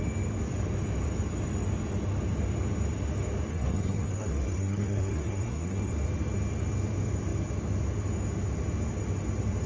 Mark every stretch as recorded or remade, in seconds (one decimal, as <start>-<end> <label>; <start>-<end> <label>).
0.0-3.5 recorded; 3.5-5.9 remade; 5.9-9.7 recorded